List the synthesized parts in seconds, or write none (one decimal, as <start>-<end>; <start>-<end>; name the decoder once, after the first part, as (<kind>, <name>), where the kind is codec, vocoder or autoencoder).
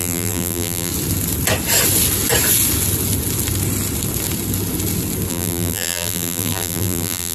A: 0.0-0.9 (vocoder, BigVGAN v2); 5.3-7.3